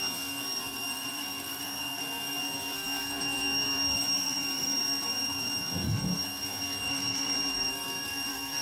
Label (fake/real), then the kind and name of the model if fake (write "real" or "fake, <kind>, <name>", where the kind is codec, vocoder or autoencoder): fake, codec, SNAC